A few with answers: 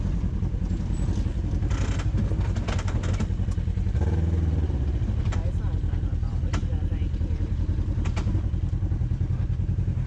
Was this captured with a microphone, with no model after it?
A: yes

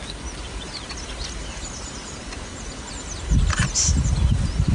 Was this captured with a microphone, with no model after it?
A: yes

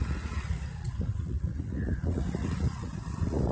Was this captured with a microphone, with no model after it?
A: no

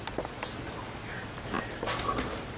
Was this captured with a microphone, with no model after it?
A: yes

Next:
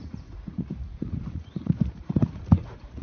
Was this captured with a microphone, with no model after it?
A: no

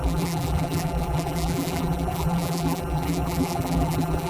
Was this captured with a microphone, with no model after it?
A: no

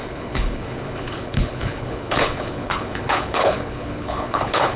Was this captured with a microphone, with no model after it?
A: no